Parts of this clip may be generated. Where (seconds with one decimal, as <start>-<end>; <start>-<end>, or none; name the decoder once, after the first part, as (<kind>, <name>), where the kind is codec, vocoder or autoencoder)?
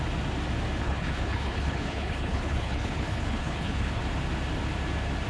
0.8-4.0 (codec, HILCodec)